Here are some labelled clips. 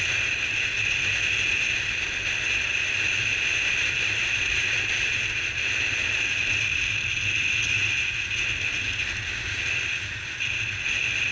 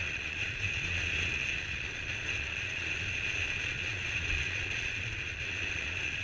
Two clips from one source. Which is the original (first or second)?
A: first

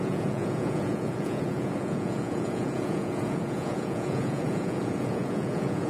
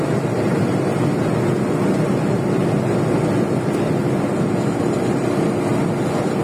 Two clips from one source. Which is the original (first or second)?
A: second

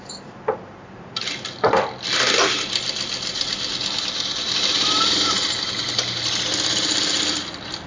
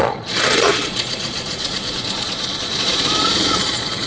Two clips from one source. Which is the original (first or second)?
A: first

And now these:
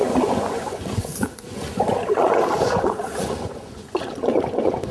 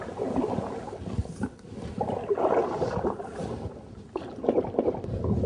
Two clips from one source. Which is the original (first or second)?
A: second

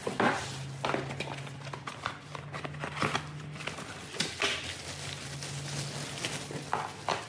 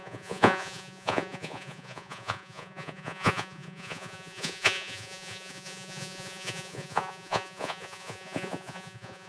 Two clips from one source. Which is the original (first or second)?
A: first